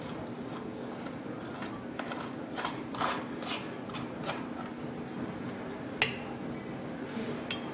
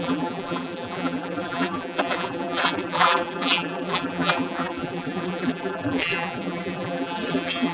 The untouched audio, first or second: first